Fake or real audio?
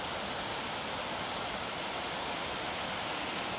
real